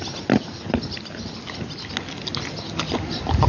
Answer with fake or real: real